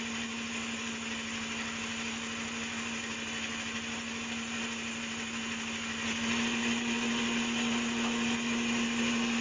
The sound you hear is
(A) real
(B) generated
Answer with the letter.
A